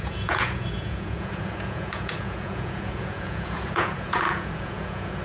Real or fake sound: fake